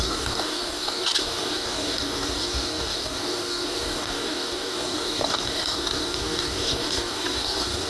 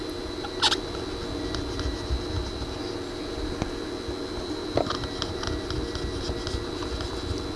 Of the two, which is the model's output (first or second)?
first